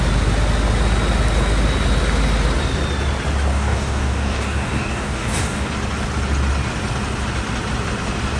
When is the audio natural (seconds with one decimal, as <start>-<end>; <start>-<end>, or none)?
0.0-3.5; 5.7-8.4